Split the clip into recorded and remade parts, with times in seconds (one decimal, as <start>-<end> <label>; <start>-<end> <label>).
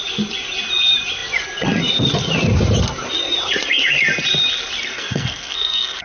0.0-4.8 recorded; 4.8-6.0 remade